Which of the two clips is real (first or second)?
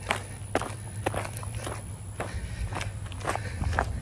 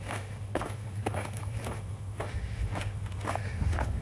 first